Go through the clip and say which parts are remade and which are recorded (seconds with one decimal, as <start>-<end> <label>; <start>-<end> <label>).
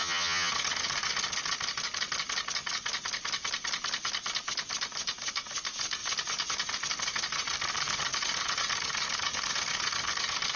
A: 0.0-0.5 remade; 0.5-10.6 recorded